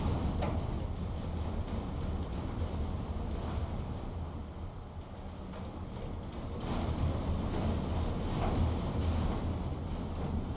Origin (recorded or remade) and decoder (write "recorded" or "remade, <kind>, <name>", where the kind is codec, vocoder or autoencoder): recorded